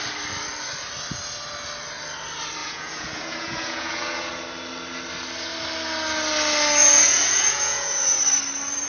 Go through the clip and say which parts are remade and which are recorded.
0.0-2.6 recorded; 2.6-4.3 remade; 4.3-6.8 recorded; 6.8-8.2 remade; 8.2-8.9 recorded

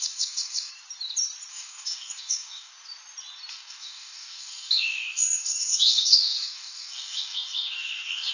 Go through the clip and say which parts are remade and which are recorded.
0.0-0.7 remade; 0.7-1.5 recorded; 1.5-2.7 remade; 2.7-3.5 recorded; 3.5-8.3 remade